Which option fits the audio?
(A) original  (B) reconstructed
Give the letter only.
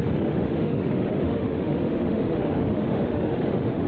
B